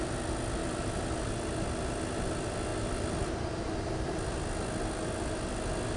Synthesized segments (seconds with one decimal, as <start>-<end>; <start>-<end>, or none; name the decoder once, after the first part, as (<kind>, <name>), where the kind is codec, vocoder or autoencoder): none